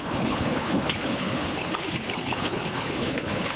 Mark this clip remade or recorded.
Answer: remade